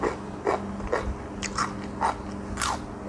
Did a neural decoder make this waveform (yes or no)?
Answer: no